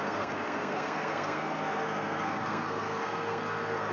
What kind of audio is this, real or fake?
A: fake